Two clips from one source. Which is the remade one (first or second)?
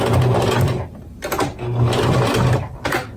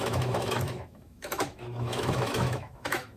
second